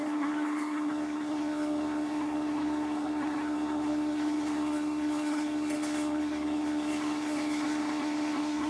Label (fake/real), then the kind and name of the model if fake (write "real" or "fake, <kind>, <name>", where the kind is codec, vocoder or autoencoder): fake, codec, SNAC